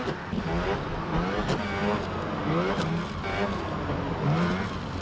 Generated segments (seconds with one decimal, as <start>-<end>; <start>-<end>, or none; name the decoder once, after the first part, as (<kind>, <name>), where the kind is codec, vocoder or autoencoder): none